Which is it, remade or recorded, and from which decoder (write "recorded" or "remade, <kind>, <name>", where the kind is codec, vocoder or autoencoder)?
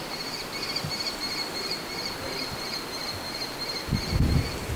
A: recorded